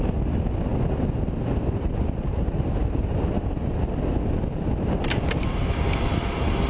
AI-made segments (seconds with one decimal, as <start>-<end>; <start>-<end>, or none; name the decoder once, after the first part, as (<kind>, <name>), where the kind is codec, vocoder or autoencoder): none